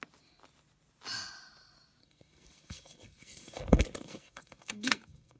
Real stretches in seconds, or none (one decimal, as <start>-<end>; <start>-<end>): 0.0-2.0